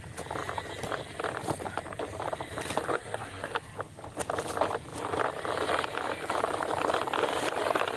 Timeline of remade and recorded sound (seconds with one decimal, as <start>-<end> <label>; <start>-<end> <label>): 0.0-2.9 recorded; 2.9-3.5 remade; 3.5-8.0 recorded